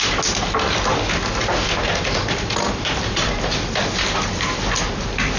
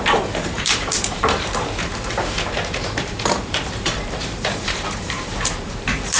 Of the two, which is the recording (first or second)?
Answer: first